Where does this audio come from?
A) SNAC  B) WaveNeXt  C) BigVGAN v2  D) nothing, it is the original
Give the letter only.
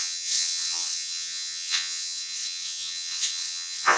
B